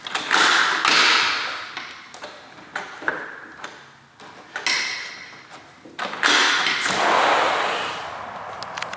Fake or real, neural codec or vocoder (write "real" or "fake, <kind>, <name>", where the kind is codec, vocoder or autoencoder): real